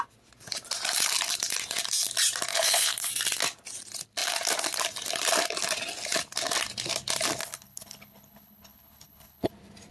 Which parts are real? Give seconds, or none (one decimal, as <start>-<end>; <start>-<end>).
0.0-2.5; 3.1-7.4; 9.5-9.9